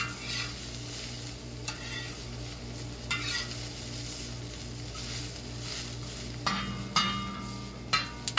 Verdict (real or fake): real